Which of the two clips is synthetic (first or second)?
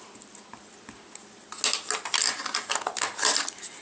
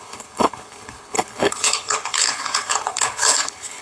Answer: second